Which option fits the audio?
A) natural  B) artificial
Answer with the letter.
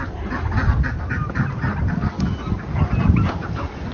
A